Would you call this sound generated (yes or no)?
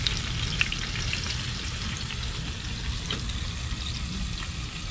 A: no